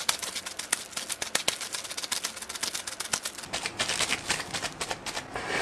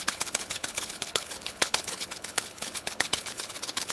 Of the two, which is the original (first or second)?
first